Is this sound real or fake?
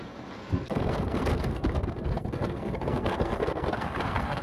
fake